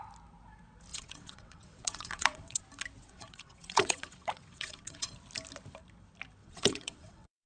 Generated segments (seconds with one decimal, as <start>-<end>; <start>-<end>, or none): 0.9-2.6; 3.0-5.1; 6.4-7.5